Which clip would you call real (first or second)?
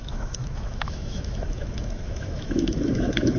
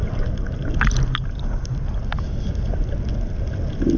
second